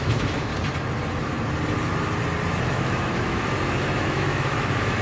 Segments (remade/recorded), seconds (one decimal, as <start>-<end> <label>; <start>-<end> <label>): 0.0-0.5 remade; 0.5-2.7 recorded; 2.7-5.0 remade